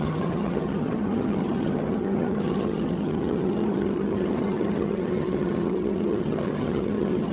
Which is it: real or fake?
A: fake